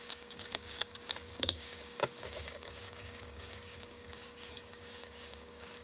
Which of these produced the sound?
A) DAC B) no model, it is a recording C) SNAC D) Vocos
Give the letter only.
A